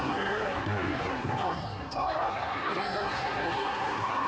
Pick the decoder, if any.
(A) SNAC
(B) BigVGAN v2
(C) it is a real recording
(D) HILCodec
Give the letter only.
A